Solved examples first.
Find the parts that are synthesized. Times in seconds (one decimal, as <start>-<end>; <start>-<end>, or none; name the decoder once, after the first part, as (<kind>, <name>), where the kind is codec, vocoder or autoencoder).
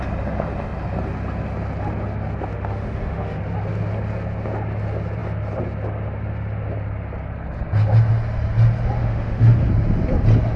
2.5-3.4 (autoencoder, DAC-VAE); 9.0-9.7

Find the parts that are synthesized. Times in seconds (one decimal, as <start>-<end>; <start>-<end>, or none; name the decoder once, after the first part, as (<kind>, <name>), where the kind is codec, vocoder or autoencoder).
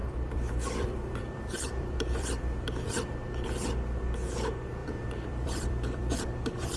0.0-2.9 (vocoder, BigVGAN v2); 4.8-6.8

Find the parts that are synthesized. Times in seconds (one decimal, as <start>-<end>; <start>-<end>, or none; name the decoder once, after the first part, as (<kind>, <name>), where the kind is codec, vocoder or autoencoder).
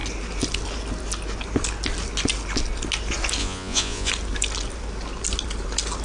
3.4-4.1 (vocoder, Vocos)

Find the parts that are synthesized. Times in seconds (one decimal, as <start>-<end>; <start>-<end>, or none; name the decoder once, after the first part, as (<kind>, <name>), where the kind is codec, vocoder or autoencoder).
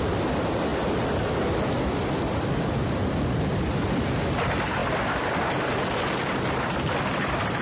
none